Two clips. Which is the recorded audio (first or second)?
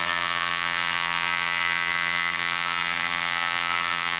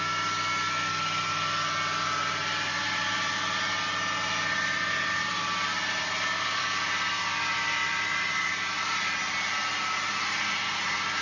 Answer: second